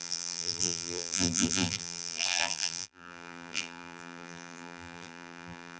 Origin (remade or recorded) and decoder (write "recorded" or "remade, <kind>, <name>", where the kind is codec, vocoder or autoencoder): remade, vocoder, BigVGAN v2